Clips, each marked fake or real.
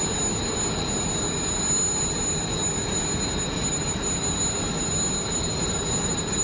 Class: real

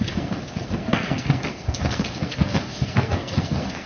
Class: fake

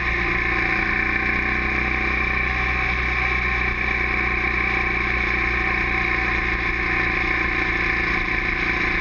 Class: real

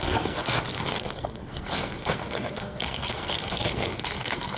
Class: fake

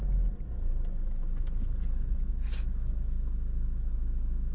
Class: real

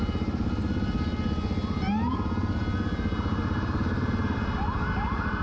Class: real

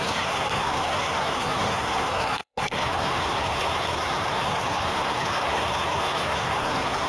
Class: fake